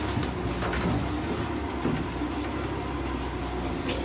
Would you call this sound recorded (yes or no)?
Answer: yes